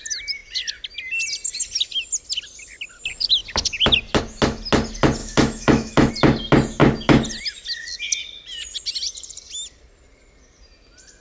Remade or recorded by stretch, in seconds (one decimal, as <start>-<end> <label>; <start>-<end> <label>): 0.0-5.2 recorded; 5.2-6.1 remade; 6.1-11.2 recorded